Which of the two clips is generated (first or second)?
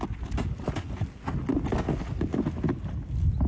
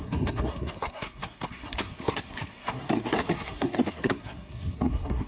second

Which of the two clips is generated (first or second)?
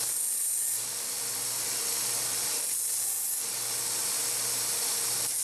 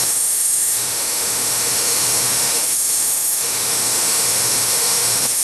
second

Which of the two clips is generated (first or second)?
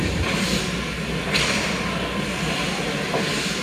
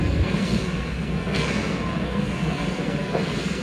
second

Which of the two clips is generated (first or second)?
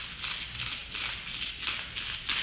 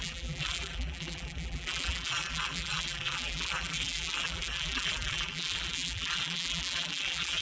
second